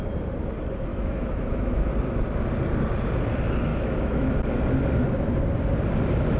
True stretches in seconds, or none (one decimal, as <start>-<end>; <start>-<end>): 0.0-0.9; 1.9-3.7; 4.3-6.4

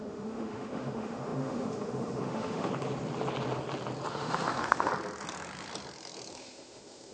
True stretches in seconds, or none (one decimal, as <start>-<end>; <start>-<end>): 2.7-4.1; 4.9-6.3

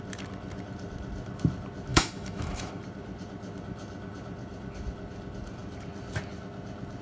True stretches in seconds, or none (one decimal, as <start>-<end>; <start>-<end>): 0.0-1.9; 2.7-7.0

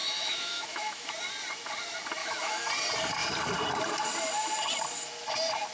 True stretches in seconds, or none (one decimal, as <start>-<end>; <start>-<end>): 1.1-2.2; 2.7-5.7

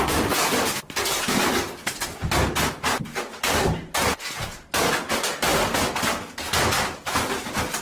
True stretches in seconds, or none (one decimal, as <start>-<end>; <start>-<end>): 0.0-7.8

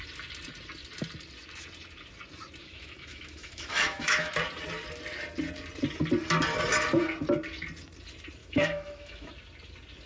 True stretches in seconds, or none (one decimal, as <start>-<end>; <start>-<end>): 0.0-2.6; 4.3-8.4; 9.3-10.1

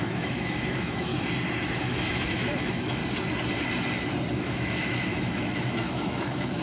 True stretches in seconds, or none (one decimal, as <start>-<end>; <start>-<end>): 1.1-1.8; 3.0-4.3